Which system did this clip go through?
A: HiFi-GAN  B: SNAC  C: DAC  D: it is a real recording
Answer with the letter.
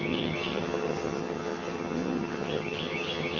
A